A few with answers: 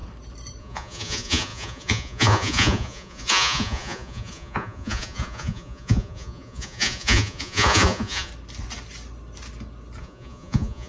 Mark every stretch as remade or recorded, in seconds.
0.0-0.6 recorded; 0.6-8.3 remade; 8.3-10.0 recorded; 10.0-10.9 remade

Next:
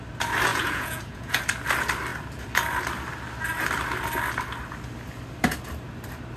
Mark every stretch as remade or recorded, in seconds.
0.0-0.5 recorded; 0.5-1.4 remade; 1.4-6.4 recorded

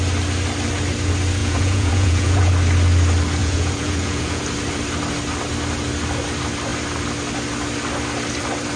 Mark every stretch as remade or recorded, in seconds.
0.0-1.4 recorded; 1.4-2.5 remade; 2.5-3.4 recorded; 3.4-4.4 remade; 4.4-8.8 recorded

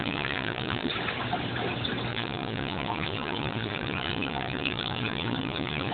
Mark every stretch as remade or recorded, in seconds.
0.0-0.9 remade; 0.9-2.1 recorded; 2.1-5.9 remade

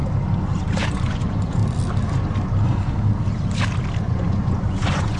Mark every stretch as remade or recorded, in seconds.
0.0-0.9 recorded; 0.9-1.6 remade; 1.6-4.0 recorded; 4.0-5.2 remade

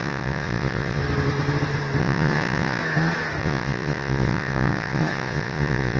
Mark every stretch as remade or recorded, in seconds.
0.0-1.0 remade; 1.0-2.0 recorded; 2.0-2.8 remade; 2.8-3.4 recorded; 3.4-6.0 remade

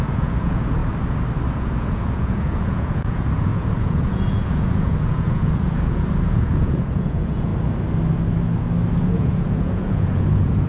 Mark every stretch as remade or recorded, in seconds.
0.0-0.8 remade; 0.8-1.5 recorded; 1.5-7.5 remade; 7.5-9.0 recorded; 9.0-10.7 remade

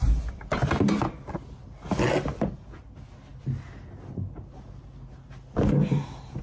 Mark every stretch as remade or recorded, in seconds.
0.0-6.4 recorded